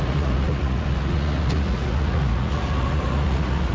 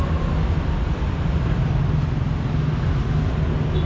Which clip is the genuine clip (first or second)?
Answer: second